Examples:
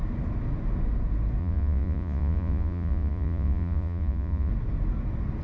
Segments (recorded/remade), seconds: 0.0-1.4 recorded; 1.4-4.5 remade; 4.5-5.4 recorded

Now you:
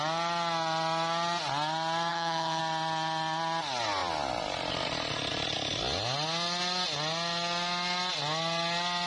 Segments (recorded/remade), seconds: 0.0-2.1 recorded; 2.1-2.6 remade; 2.6-9.1 recorded

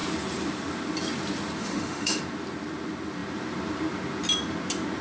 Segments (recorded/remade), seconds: 0.0-1.6 recorded; 1.6-2.2 remade; 2.2-5.0 recorded

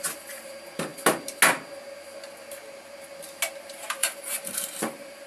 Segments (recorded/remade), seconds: 0.0-0.9 remade; 0.9-3.6 recorded; 3.6-5.3 remade

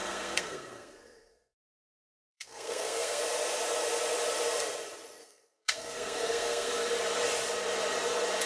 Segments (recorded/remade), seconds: 0.0-3.2 remade; 3.2-5.2 recorded; 5.2-6.7 remade; 6.7-8.5 recorded

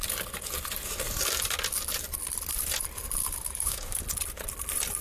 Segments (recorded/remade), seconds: 0.0-3.2 recorded; 3.2-4.0 remade; 4.0-5.0 recorded

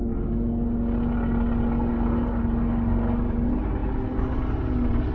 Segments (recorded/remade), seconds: 0.0-5.1 recorded